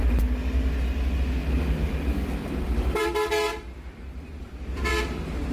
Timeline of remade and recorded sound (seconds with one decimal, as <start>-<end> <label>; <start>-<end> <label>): 0.0-3.5 recorded; 3.5-5.0 remade; 5.0-5.5 recorded